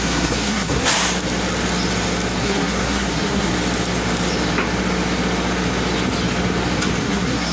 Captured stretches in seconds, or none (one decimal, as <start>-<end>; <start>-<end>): 0.9-2.4; 3.5-7.0